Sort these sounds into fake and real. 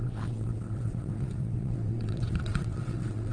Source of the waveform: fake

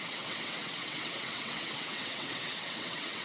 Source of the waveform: fake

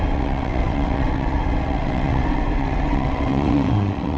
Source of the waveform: fake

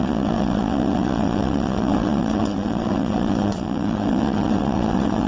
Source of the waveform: fake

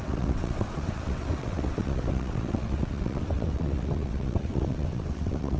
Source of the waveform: fake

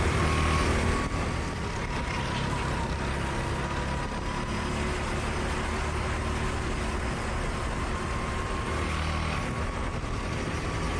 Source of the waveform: real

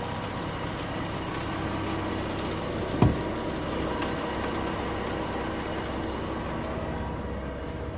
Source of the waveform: real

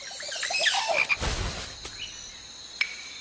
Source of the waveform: real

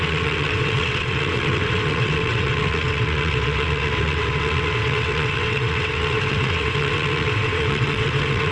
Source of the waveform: fake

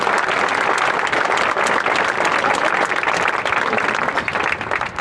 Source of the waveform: real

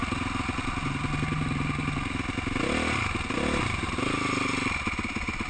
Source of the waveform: real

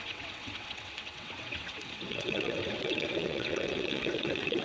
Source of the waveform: fake